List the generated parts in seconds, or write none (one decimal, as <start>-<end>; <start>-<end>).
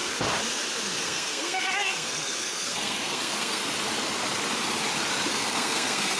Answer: 1.0-3.6; 5.3-6.2